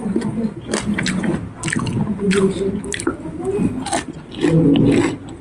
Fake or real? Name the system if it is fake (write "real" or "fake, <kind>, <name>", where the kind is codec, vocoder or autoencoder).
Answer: real